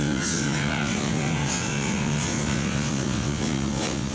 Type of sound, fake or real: fake